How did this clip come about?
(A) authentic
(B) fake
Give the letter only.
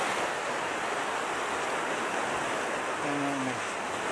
A